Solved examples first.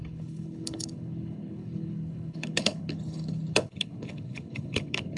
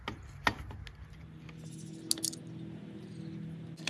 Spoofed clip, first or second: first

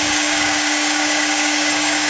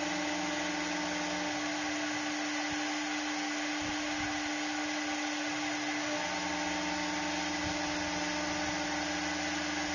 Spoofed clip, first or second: first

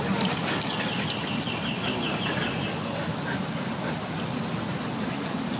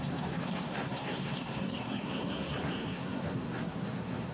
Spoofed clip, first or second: second